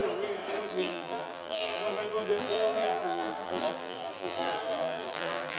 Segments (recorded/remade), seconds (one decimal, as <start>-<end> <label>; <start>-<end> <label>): 0.0-0.6 recorded; 0.6-5.6 remade